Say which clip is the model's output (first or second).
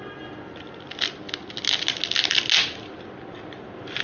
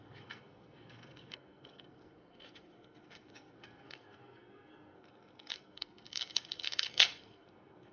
second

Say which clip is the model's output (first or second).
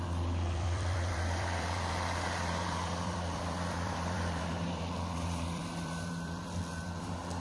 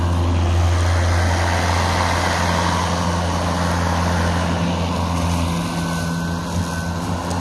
first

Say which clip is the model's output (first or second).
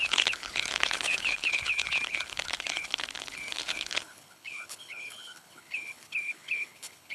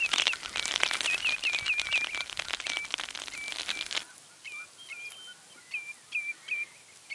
first